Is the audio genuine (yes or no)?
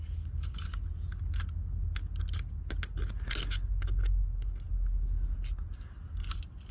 yes